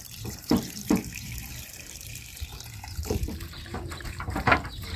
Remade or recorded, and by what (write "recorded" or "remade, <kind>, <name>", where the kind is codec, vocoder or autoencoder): remade, vocoder, BigVGAN v2